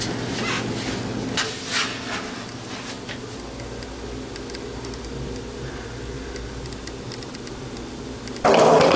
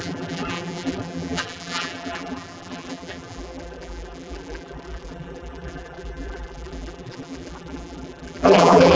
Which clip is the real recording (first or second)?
first